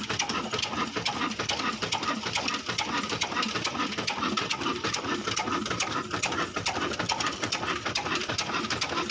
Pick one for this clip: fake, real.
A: fake